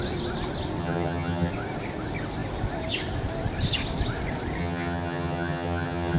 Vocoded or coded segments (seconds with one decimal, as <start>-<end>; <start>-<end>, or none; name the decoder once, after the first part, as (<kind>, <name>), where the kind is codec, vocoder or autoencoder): 0.8-1.5 (vocoder, HiFi-GAN); 4.6-6.2